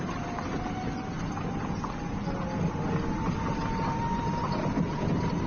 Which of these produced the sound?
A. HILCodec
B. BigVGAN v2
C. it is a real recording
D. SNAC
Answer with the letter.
C